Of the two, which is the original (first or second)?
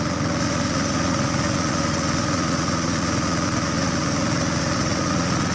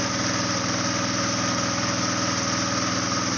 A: second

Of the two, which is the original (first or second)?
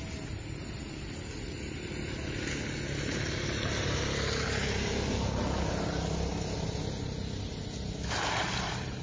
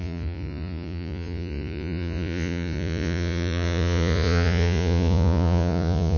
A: first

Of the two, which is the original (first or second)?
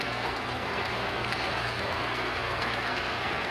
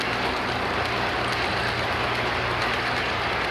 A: second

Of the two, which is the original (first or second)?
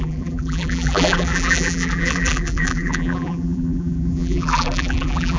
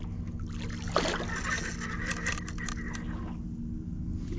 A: second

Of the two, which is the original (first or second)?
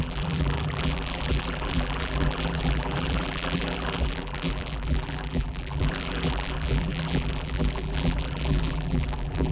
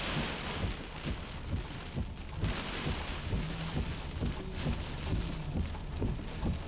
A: second